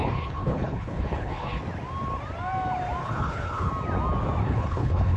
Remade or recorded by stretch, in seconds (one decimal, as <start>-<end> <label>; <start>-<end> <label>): 0.0-1.6 remade; 1.6-3.0 recorded; 3.0-3.7 remade; 3.7-4.4 recorded; 4.4-5.2 remade